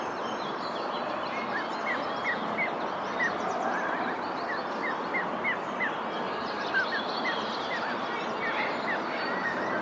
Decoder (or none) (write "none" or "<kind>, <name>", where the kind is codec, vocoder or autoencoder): none